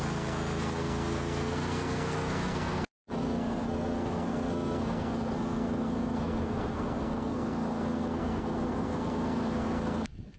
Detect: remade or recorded remade